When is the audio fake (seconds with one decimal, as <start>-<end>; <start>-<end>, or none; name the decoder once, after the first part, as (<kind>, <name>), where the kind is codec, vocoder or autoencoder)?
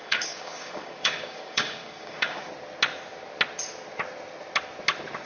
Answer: 0.0-2.5 (codec, DAC)